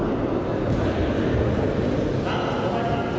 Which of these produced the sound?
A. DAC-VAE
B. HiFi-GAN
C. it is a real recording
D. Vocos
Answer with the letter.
C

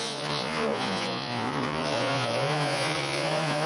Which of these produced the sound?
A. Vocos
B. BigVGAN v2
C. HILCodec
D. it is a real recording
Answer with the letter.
A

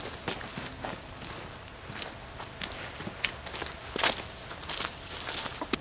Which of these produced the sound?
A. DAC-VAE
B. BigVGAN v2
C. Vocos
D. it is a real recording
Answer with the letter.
D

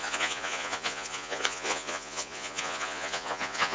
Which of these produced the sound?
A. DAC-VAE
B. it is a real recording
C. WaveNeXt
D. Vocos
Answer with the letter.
D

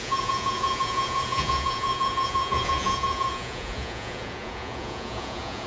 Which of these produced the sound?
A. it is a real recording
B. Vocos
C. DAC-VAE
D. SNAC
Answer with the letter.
B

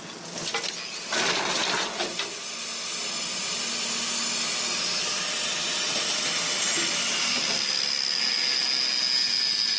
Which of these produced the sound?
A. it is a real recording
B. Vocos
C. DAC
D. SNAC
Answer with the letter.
A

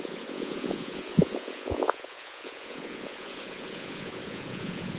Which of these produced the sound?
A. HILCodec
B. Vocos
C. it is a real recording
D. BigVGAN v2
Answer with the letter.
B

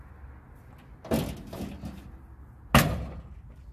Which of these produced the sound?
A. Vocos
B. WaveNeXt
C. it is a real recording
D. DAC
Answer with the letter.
C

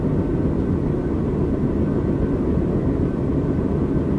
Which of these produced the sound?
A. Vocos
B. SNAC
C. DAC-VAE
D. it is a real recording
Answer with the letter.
D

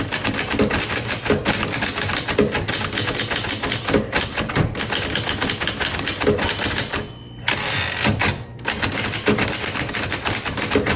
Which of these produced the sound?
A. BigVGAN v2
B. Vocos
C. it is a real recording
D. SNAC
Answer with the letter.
C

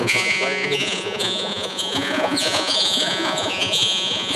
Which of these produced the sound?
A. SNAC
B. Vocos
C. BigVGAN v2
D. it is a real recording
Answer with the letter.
B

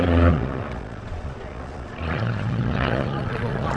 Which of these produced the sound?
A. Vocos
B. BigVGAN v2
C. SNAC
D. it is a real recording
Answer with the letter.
A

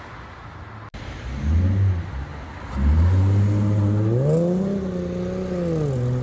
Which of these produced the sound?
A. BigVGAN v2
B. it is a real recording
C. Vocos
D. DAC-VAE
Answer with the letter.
B